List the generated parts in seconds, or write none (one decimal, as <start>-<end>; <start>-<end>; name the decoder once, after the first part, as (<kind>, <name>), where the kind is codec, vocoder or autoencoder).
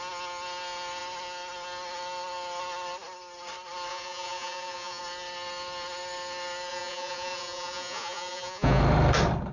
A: 3.9-5.0 (vocoder, Vocos); 6.7-8.8